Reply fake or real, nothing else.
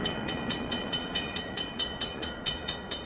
fake